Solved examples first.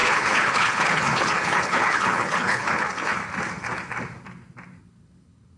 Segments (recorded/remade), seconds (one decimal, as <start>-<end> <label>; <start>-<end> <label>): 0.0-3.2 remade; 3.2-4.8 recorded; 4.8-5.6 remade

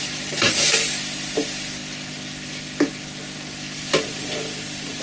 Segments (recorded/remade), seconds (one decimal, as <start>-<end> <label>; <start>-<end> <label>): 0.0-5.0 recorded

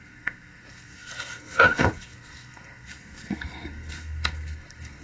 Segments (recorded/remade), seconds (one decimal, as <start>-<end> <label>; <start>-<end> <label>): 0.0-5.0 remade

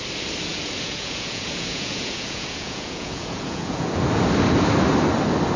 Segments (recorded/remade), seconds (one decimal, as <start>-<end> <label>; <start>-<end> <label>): 0.0-0.5 recorded; 0.5-3.9 remade; 3.9-5.6 recorded

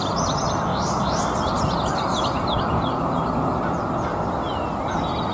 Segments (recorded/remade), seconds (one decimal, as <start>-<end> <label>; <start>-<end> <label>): 0.0-4.1 recorded; 4.1-5.3 remade